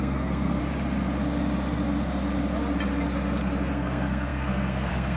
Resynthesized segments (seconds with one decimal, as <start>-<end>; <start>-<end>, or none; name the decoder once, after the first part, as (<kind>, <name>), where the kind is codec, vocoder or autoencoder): 0.0-0.6 (codec, SNAC); 3.7-5.2